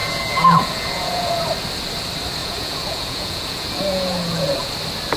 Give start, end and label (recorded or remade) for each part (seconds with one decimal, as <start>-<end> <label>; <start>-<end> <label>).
0.0-1.4 remade; 1.4-2.4 recorded; 2.4-4.7 remade; 4.7-5.2 recorded

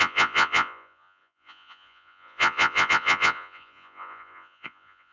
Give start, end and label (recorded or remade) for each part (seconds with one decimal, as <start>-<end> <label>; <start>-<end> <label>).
0.0-5.1 remade

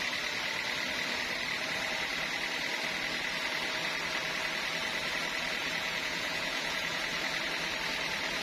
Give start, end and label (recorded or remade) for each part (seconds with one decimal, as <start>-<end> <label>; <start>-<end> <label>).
0.0-5.6 recorded; 5.6-7.0 remade; 7.0-8.4 recorded

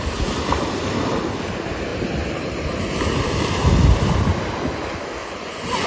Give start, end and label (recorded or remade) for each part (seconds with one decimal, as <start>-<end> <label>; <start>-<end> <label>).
0.0-5.2 recorded; 5.2-5.9 remade

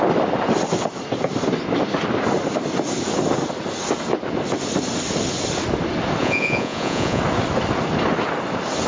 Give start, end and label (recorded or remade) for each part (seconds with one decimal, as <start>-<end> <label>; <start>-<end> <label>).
0.0-6.2 recorded; 6.2-7.2 remade; 7.2-8.9 recorded

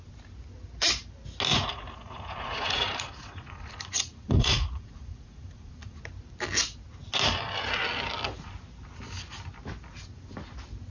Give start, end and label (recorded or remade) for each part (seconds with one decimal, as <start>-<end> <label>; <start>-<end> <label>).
0.0-1.5 recorded; 1.5-6.0 remade; 6.0-10.9 recorded

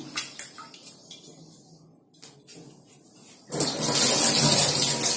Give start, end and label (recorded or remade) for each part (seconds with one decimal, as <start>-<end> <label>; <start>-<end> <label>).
0.0-5.2 recorded

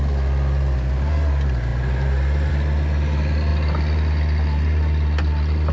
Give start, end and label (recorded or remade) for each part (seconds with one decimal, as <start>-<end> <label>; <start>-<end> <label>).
0.0-5.7 recorded